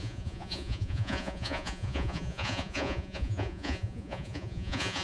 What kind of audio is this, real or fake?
fake